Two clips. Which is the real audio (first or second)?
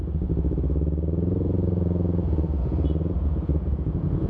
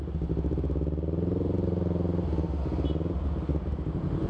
second